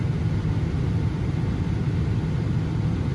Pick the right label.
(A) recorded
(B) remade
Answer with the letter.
A